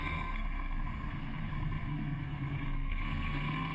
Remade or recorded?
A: remade